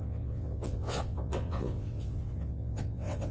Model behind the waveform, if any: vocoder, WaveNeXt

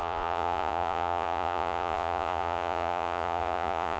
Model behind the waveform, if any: vocoder, Vocos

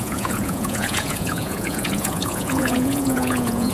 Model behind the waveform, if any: vocoder, Vocos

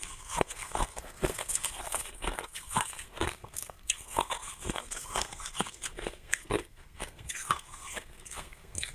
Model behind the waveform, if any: codec, SNAC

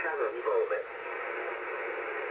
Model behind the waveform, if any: none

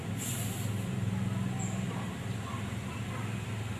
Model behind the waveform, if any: none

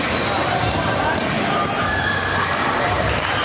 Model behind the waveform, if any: vocoder, BigVGAN v2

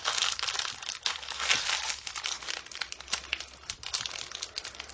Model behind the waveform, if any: none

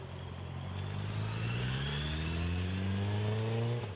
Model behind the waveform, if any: none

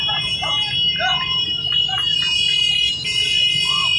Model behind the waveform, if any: none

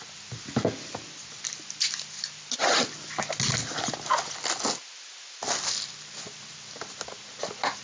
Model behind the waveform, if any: none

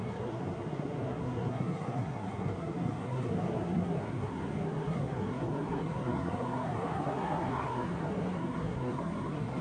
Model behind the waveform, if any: codec, SNAC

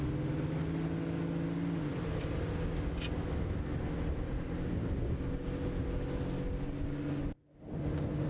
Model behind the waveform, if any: none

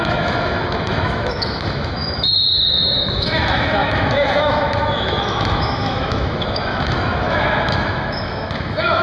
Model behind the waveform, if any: autoencoder, DAC-VAE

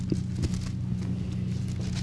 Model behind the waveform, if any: none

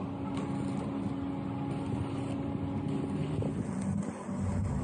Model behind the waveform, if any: none